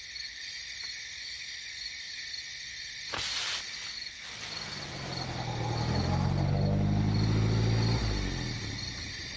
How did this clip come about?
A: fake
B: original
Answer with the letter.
B